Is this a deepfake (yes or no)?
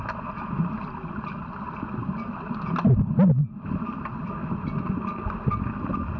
no